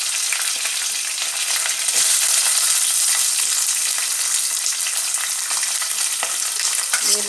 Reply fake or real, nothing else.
real